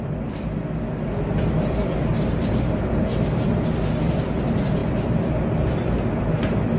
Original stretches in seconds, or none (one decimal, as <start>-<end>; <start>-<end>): none